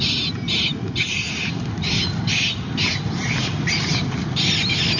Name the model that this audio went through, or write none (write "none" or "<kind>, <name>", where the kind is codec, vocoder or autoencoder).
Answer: none